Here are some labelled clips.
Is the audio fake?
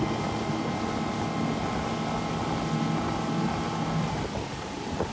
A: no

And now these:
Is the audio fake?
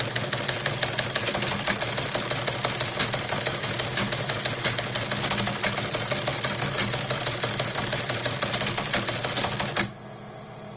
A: no